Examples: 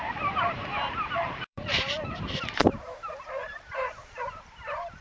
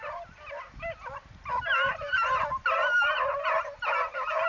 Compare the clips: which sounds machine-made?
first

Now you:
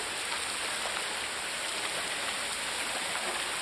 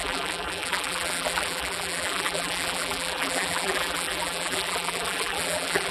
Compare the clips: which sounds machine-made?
second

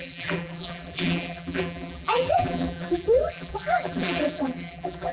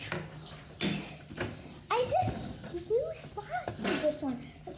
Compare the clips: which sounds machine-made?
first